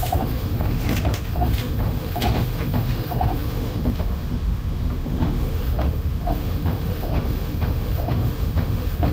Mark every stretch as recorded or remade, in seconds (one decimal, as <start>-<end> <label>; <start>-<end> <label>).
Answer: 0.0-9.1 remade